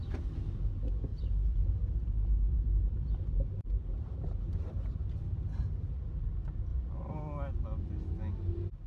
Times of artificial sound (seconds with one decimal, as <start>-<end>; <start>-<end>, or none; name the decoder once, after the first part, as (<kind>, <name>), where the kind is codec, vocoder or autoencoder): 1.1-5.8 (vocoder, BigVGAN v2); 6.7-7.2